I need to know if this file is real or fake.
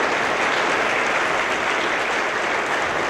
real